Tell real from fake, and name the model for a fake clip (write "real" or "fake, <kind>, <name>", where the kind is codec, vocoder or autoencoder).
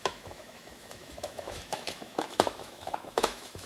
fake, autoencoder, DAC-VAE